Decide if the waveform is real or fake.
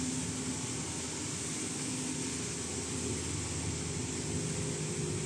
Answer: real